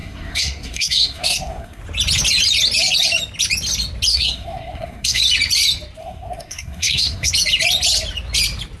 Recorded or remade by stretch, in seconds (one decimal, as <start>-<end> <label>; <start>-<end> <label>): 0.0-1.8 remade; 1.8-4.1 recorded; 4.1-5.2 remade; 5.2-6.0 recorded; 6.0-7.3 remade; 7.3-8.8 recorded